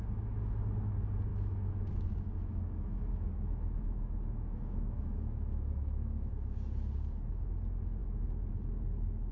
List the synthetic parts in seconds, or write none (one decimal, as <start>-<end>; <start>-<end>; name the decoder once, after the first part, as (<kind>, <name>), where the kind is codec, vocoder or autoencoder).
1.3-6.3 (autoencoder, DAC-VAE)